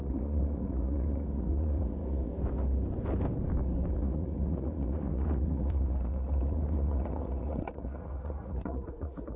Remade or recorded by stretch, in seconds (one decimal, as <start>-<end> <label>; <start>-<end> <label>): 0.0-2.3 remade; 2.3-3.9 recorded; 3.9-9.4 remade